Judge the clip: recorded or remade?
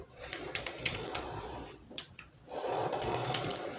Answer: remade